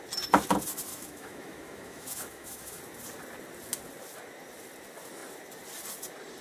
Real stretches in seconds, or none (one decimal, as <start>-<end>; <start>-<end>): 0.0-0.9; 2.8-6.4